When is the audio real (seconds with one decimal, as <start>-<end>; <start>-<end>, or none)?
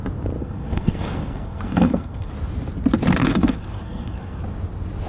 0.0-0.4; 2.3-3.2; 4.4-5.1